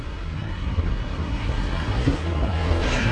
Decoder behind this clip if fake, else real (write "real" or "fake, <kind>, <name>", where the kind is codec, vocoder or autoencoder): fake, codec, SNAC